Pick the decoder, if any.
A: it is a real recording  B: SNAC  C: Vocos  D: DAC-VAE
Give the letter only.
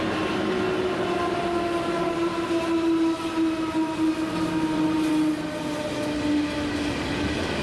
A